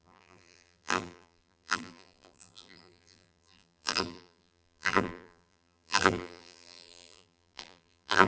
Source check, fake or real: fake